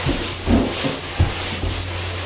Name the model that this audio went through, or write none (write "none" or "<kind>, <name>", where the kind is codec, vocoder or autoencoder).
none